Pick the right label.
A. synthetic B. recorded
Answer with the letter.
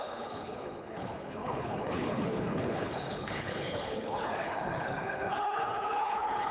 A